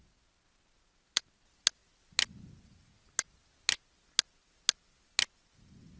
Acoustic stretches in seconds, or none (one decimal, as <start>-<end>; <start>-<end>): 0.0-6.0